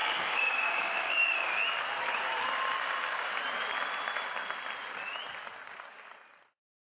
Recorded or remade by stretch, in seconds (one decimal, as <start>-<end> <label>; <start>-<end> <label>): 0.0-1.6 remade; 1.6-2.7 recorded; 2.7-3.3 remade; 3.3-6.9 recorded